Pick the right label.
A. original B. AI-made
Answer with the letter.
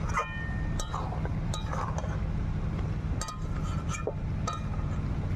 A